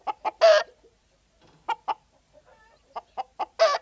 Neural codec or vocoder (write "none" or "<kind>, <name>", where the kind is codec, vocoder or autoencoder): none